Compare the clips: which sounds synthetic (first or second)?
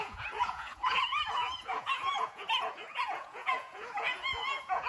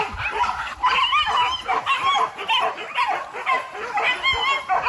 first